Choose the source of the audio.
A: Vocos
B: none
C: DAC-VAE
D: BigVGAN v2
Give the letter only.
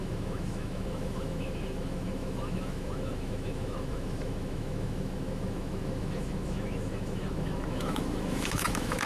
C